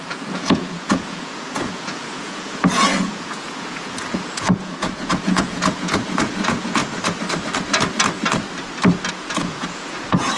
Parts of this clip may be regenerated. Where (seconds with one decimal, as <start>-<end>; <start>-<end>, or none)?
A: 0.0-6.8; 9.1-10.4